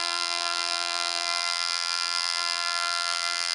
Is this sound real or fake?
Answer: fake